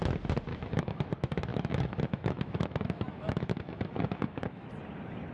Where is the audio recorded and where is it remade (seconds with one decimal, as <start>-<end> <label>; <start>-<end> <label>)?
0.0-0.5 recorded; 0.5-1.1 remade; 1.1-1.5 recorded; 1.5-4.7 remade; 4.7-5.3 recorded